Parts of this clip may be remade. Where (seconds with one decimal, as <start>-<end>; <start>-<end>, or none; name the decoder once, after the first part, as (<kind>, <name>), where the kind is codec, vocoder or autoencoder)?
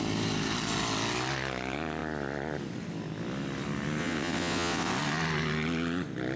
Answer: 4.0-4.9 (vocoder, WaveNeXt)